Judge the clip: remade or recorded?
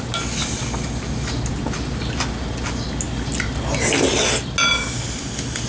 recorded